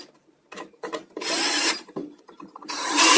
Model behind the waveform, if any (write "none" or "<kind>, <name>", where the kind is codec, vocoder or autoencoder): vocoder, BigVGAN v2